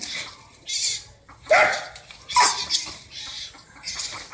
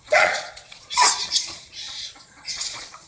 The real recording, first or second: first